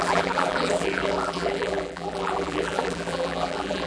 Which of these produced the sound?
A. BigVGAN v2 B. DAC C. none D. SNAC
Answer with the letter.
A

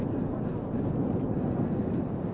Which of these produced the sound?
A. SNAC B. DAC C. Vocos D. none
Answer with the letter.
D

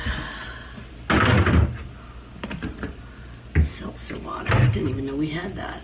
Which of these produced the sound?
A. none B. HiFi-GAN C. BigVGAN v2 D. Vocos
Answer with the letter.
A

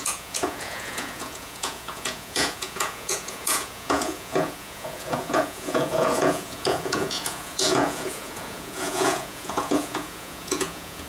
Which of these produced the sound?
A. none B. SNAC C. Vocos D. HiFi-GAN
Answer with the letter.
C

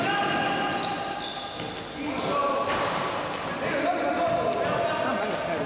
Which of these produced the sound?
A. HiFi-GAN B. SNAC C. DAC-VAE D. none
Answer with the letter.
D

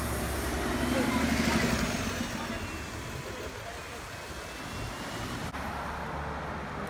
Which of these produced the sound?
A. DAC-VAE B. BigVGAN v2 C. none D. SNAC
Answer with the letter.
C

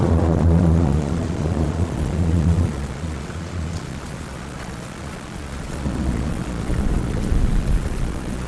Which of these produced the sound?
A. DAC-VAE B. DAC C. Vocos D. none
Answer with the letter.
C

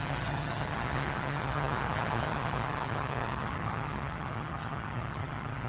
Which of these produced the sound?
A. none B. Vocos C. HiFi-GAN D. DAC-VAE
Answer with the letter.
C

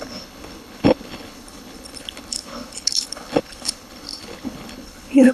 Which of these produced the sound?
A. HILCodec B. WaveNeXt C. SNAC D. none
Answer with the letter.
A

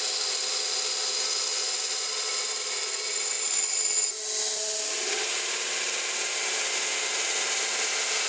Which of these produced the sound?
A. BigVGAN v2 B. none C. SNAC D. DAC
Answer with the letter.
B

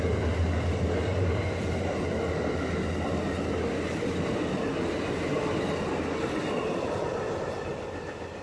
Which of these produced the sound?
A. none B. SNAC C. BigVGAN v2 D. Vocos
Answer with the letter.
A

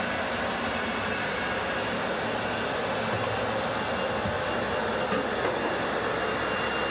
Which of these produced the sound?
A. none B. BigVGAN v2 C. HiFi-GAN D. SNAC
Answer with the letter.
A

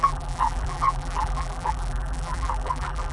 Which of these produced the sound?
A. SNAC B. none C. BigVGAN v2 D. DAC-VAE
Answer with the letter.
C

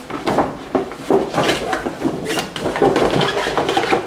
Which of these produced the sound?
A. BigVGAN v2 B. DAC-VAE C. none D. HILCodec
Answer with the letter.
C